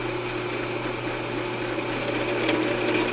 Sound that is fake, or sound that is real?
real